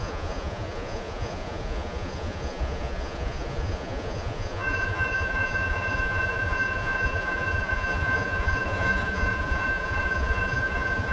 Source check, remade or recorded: remade